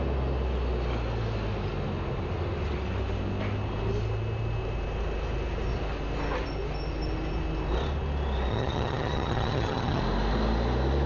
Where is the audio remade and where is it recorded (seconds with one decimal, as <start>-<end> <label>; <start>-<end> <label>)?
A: 0.0-8.5 recorded; 8.5-10.0 remade; 10.0-11.1 recorded